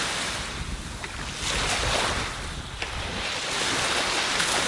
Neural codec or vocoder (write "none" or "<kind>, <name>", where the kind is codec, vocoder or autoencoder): none